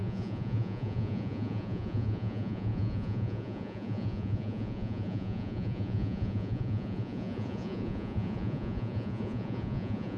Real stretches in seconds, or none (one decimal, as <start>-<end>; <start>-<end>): none